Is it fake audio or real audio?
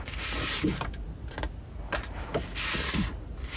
real